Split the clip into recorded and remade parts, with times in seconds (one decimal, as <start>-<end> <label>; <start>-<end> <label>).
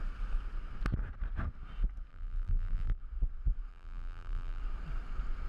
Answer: 0.0-2.1 recorded; 2.1-3.0 remade; 3.0-3.7 recorded; 3.7-4.6 remade; 4.6-5.5 recorded